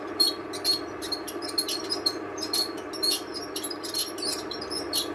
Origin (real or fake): real